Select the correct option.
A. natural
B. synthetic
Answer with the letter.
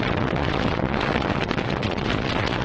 B